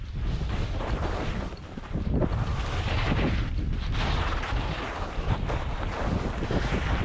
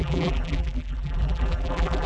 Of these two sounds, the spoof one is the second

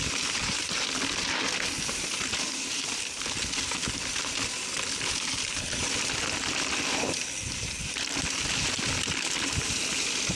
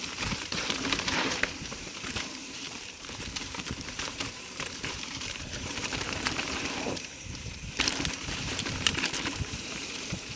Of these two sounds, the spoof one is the second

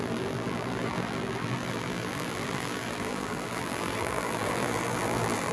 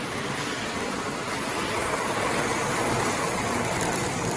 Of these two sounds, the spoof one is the first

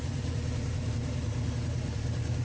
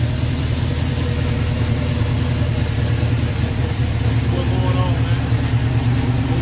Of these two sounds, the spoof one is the first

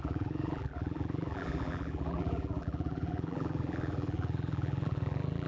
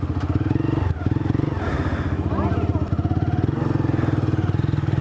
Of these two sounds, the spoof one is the first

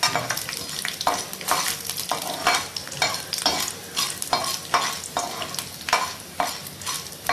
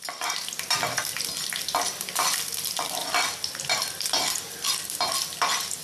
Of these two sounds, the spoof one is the second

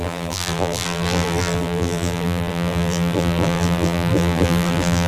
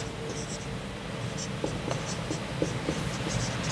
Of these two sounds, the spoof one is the first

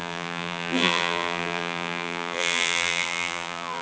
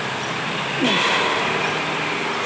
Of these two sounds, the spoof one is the first